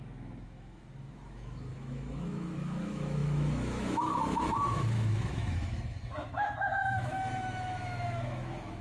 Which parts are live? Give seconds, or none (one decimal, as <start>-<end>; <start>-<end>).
none